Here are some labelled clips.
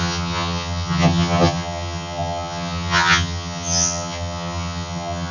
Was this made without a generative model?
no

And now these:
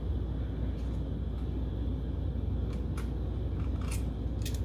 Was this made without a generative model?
yes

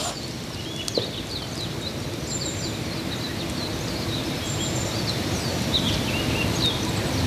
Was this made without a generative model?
yes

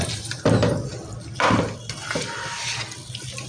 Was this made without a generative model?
yes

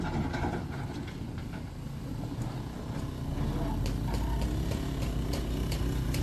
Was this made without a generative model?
yes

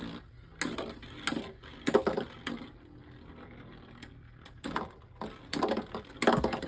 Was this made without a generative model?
yes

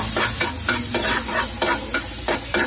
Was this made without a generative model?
yes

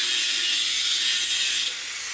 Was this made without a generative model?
yes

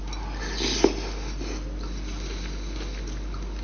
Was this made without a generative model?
yes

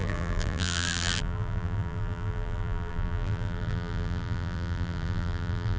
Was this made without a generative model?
no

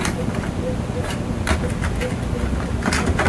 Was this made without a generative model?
yes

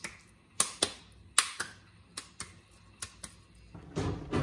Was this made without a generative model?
yes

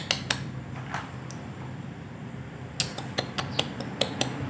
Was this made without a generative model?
yes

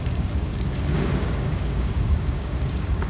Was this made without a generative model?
no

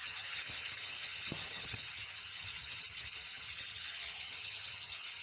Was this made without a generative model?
no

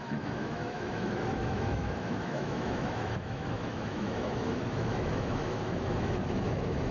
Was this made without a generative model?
no